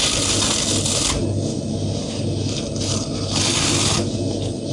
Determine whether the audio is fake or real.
real